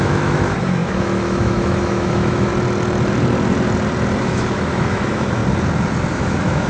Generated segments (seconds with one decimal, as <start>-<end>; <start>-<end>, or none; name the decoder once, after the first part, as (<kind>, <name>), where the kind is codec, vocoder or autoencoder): 0.0-2.5 (autoencoder, DAC-VAE); 4.2-5.4; 6.1-6.7